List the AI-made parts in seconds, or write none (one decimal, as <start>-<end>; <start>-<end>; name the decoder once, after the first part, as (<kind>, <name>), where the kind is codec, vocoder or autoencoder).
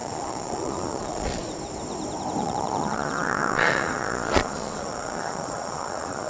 0.0-1.4 (vocoder, Vocos); 2.4-6.3